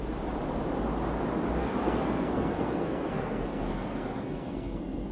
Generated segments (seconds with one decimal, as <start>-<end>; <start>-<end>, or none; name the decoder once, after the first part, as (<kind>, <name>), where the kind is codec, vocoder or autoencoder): 1.6-5.1 (codec, SNAC)